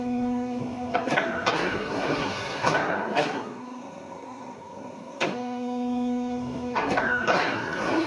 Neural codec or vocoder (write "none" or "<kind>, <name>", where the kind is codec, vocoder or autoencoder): codec, SNAC